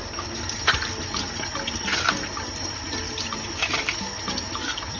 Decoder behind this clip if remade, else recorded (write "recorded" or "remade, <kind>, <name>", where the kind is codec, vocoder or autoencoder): remade, vocoder, BigVGAN v2